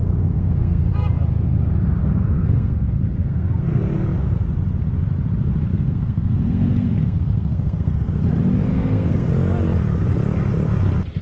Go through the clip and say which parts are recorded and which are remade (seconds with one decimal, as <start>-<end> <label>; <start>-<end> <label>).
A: 0.0-0.9 remade; 0.9-2.0 recorded; 2.0-3.8 remade; 3.8-5.7 recorded; 5.7-8.2 remade; 8.2-8.7 recorded; 8.7-9.3 remade; 9.3-11.2 recorded